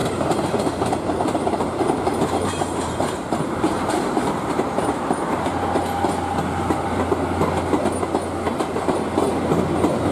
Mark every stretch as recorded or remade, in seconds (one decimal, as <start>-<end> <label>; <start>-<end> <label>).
0.0-5.5 remade; 5.5-10.1 recorded